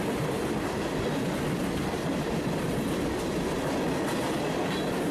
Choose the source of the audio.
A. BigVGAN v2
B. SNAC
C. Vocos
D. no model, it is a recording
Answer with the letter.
D